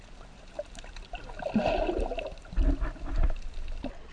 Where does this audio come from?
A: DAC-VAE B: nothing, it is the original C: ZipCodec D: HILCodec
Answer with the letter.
B